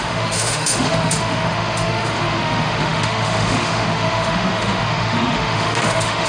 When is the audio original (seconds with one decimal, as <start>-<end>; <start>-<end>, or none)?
none